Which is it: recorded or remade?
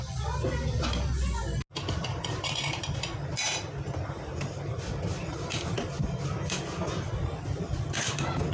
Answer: recorded